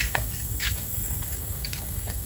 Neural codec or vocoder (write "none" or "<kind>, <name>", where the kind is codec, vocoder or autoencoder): codec, SNAC